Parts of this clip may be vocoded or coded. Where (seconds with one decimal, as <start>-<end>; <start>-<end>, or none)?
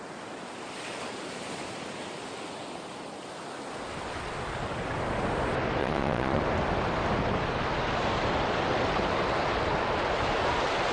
5.8-6.4